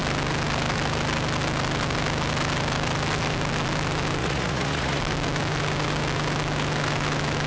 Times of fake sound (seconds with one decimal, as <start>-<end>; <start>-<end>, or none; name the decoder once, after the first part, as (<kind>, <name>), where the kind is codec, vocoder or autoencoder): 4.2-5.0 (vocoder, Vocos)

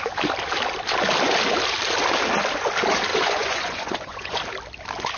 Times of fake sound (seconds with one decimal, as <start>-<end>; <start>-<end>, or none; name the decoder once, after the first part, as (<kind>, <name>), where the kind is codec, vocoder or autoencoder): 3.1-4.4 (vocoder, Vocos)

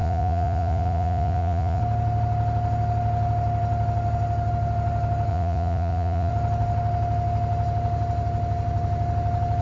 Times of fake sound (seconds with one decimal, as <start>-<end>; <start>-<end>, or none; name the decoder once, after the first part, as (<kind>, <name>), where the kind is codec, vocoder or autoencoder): 0.0-1.8 (vocoder, Vocos); 5.3-6.3